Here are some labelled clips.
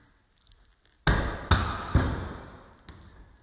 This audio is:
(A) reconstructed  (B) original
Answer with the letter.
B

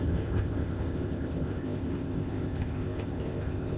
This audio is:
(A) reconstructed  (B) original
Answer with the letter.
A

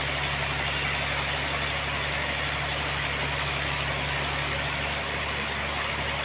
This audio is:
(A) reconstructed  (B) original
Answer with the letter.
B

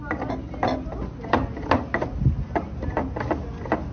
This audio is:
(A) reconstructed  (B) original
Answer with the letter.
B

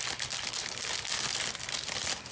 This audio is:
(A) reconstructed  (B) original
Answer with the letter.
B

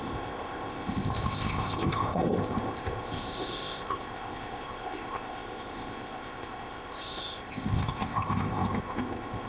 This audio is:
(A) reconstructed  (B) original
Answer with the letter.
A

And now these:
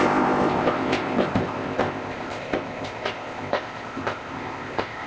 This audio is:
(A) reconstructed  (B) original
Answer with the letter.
A